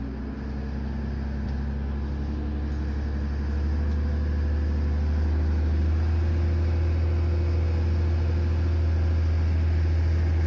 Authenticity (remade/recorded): recorded